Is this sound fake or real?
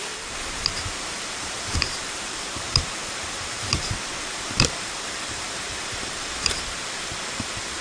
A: fake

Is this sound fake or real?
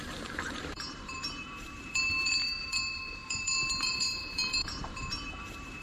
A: fake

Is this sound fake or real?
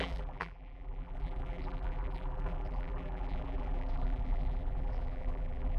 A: fake